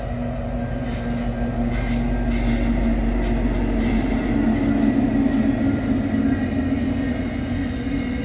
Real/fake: real